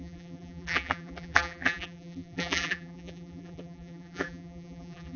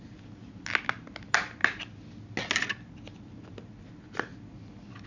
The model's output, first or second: first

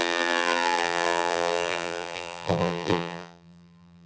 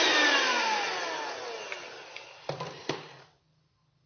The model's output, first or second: first